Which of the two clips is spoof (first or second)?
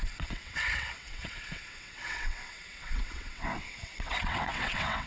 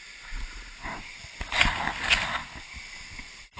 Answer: first